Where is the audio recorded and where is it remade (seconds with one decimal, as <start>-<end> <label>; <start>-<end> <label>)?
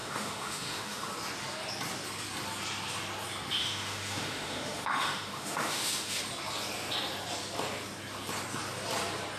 0.0-1.1 remade; 1.1-3.6 recorded; 3.6-6.2 remade; 6.2-9.4 recorded